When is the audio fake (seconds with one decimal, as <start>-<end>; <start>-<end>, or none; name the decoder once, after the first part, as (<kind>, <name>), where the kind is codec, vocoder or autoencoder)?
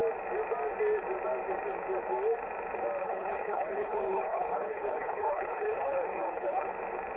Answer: 3.0-6.7 (codec, HILCodec)